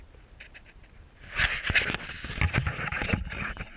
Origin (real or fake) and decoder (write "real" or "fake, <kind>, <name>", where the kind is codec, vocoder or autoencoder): real